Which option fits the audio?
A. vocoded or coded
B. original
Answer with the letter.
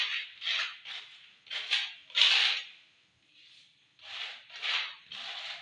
B